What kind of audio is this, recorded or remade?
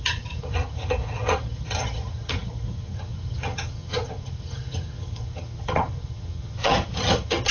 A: remade